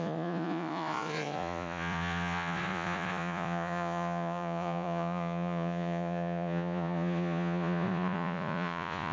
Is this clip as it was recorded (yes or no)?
no